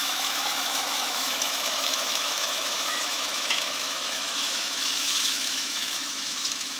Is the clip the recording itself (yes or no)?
no